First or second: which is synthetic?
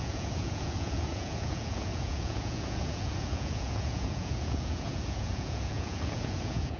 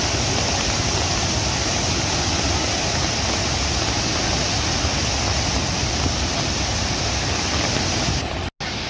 first